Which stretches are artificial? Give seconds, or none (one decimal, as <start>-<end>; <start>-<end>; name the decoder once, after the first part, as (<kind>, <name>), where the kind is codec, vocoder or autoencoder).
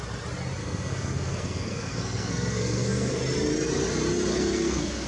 0.6-3.2 (codec, SNAC); 4.3-5.1